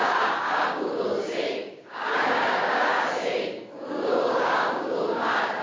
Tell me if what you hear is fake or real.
fake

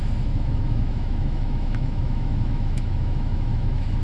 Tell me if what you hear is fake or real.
fake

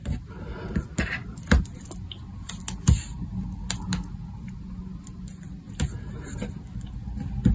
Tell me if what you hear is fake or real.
real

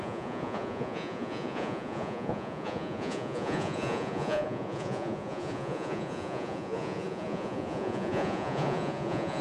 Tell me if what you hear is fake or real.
fake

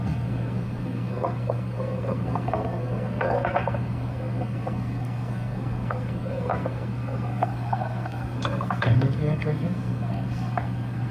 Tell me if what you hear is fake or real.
fake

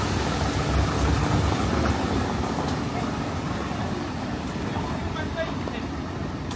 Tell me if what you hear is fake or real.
real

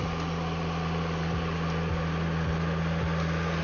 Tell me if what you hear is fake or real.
real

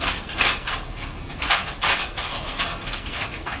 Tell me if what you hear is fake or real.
fake